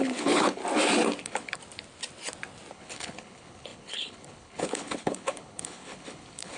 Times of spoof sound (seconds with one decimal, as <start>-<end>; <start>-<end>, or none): 0.0-0.6; 1.2-1.6; 2.7-6.6